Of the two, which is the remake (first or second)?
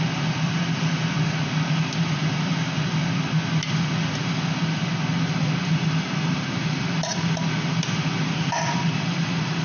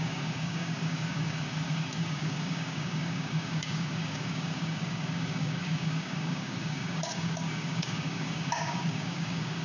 second